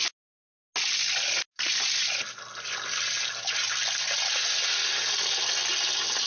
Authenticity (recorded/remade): recorded